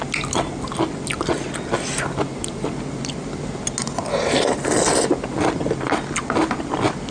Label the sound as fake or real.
real